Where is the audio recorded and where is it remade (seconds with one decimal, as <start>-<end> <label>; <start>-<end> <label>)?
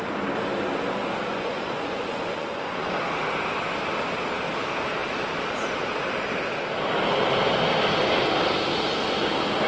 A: 0.0-1.3 recorded; 1.3-2.9 remade; 2.9-9.7 recorded